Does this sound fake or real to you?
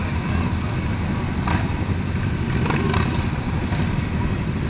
real